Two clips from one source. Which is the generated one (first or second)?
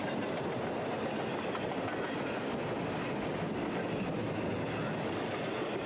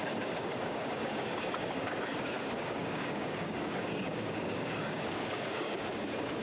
second